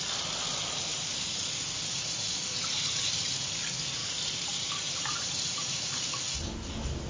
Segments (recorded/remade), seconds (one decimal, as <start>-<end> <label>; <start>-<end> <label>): 0.0-0.9 recorded; 0.9-3.1 remade; 3.1-4.0 recorded; 4.0-5.9 remade; 5.9-7.1 recorded